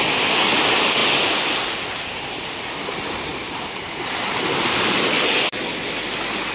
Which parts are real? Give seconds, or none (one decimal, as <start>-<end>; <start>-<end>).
0.0-6.5

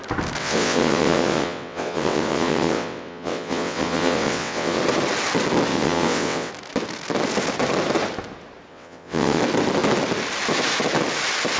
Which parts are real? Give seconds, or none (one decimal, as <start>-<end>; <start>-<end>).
0.0-0.4; 4.8-5.7; 6.5-8.7; 9.4-11.6